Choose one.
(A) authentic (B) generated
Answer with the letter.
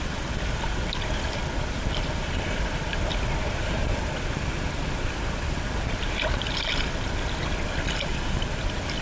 A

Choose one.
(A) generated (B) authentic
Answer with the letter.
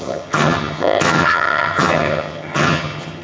A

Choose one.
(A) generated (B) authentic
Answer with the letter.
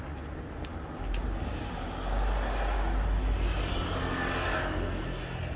B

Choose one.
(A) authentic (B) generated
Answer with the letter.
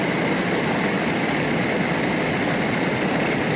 A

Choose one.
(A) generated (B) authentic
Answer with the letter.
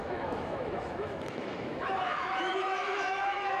A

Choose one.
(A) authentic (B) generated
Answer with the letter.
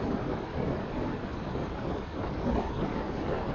B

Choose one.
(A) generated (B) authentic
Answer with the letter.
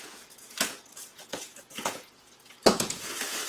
A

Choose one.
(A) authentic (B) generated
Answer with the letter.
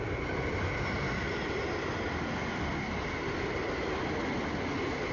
A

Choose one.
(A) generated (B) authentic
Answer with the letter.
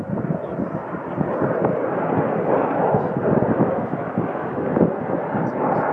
B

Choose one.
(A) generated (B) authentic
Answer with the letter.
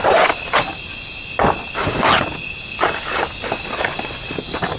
B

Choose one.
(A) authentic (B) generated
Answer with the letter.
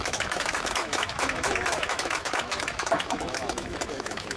B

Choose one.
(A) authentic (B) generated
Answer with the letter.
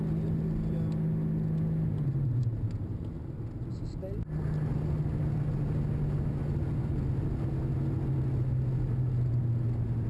A